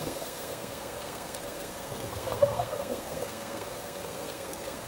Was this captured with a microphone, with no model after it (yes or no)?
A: no